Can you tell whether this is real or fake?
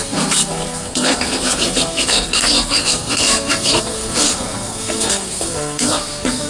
fake